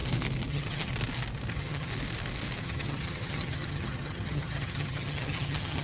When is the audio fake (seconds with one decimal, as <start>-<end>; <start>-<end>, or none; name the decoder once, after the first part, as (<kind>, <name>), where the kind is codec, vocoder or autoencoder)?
0.5-0.9 (vocoder, HiFi-GAN); 1.5-1.9; 2.6-5.8